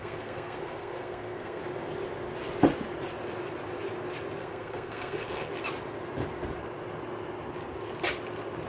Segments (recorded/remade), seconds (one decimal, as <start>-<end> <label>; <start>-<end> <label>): 0.0-1.6 remade; 1.6-4.4 recorded; 4.4-5.5 remade; 5.5-8.7 recorded